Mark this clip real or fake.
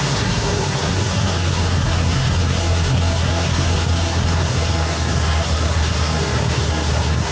fake